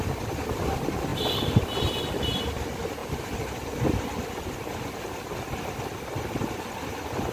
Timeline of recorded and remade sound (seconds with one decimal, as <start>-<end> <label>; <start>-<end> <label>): 0.0-7.3 recorded